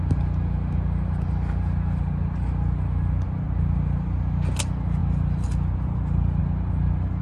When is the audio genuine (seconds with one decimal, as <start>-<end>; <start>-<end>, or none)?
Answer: 0.0-7.2